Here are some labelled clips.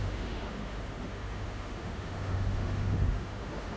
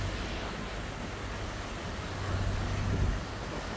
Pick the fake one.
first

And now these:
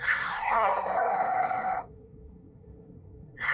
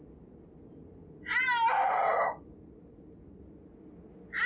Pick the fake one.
first